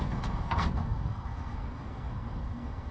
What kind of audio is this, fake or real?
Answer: fake